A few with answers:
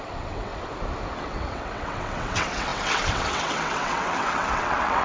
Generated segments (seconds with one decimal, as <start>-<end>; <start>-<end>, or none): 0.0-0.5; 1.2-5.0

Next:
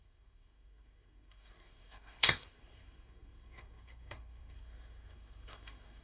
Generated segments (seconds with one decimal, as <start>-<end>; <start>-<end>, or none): 0.0-6.0

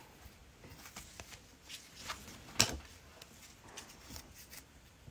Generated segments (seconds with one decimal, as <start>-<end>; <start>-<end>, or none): 0.0-0.4; 1.1-2.0; 2.6-3.1; 3.7-5.1